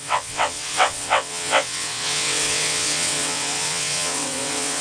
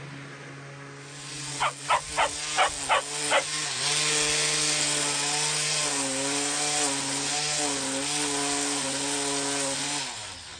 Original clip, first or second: second